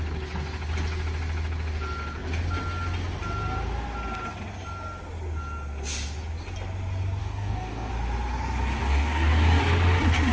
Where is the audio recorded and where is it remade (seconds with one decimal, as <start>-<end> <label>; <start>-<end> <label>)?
0.0-7.2 recorded; 7.2-7.9 remade; 7.9-8.8 recorded; 8.8-9.6 remade; 9.6-10.3 recorded